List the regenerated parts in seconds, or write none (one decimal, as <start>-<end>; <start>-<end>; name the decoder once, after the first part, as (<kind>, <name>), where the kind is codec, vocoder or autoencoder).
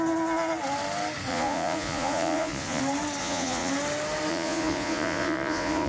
1.3-2.8 (vocoder, Vocos); 3.2-3.7; 4.3-5.9